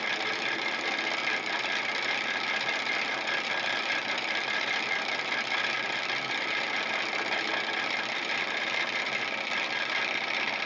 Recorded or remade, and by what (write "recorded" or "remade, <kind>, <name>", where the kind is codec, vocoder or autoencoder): recorded